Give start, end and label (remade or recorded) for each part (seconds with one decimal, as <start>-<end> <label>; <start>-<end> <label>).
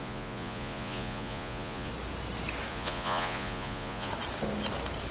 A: 0.0-1.9 remade; 1.9-2.7 recorded; 2.7-4.1 remade; 4.1-5.1 recorded